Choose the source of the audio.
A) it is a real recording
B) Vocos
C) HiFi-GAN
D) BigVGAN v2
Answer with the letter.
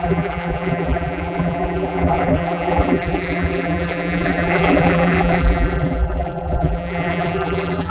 D